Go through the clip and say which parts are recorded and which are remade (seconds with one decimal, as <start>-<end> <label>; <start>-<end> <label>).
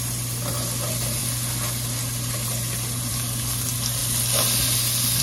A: 0.0-5.2 recorded